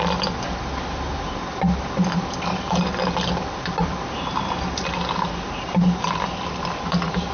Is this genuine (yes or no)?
yes